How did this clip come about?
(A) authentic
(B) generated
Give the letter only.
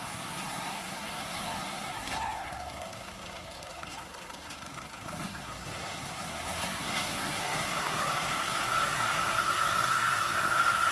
B